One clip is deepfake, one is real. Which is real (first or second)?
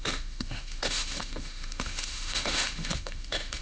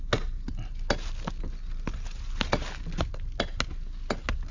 second